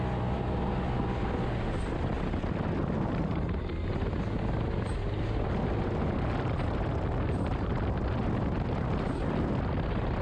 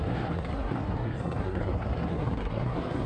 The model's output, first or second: second